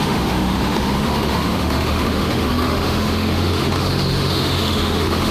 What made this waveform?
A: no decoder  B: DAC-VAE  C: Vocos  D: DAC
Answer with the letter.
B